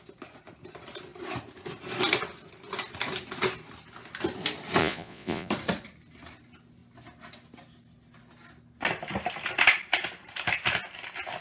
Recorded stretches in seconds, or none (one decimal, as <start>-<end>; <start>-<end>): 0.0-4.8; 5.5-11.4